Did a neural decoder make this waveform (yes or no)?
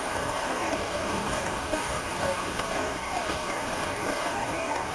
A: yes